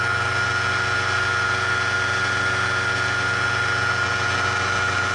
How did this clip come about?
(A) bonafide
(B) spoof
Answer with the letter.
A